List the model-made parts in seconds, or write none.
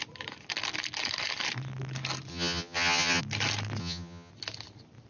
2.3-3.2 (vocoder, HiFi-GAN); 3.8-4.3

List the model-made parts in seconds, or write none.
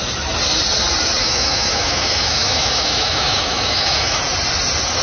1.2-4.2 (autoencoder, DAC-VAE)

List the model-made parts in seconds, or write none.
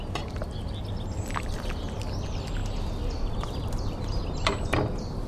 none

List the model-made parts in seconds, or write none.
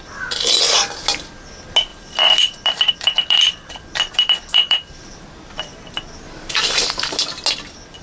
1.9-5.2 (vocoder, BigVGAN v2)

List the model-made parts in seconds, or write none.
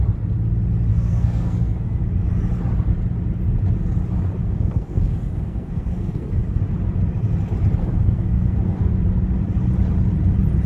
0.9-2.0 (codec, SNAC); 4.4-6.6; 7.8-8.9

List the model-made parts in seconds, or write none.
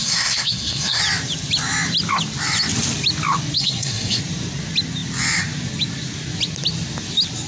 0.0-1.0 (codec, SNAC); 3.6-4.2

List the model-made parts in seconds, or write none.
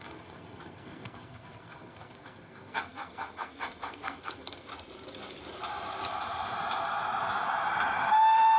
0.0-4.7 (codec, SNAC); 8.2-8.6